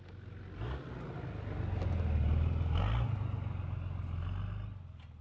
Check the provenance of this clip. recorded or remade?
recorded